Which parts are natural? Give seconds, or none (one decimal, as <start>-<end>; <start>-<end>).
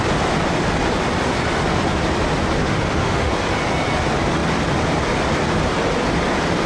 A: 0.0-2.6; 3.3-6.7